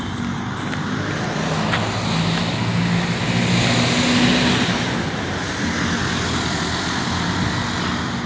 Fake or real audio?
real